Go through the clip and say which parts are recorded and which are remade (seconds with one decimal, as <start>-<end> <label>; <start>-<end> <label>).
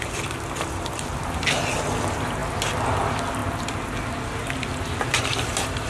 0.0-5.9 recorded